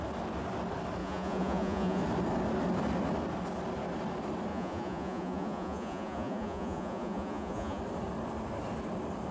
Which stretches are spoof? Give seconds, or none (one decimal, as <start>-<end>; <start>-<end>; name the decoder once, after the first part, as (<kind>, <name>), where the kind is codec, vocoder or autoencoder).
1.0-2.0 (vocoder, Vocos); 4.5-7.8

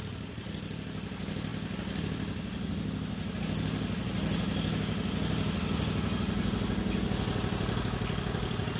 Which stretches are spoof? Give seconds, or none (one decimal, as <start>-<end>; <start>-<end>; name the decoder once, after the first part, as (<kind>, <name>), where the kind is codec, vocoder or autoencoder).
none

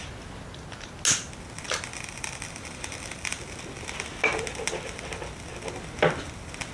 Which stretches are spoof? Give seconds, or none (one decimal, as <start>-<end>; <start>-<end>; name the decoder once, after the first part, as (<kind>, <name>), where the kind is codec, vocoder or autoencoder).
1.9-3.4 (vocoder, BigVGAN v2)

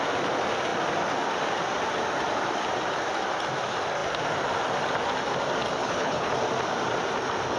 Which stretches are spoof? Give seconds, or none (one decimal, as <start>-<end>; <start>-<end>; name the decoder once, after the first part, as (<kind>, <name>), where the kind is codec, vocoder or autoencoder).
5.8-6.3 (codec, HILCodec)

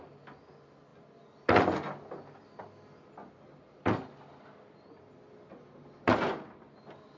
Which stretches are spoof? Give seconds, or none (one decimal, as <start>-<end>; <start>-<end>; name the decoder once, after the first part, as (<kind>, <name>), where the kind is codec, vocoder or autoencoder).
none